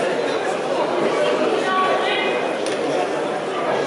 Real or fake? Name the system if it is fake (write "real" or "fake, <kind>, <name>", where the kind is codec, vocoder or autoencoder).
real